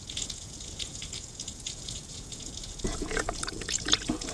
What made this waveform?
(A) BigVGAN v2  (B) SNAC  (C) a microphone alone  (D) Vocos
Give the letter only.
D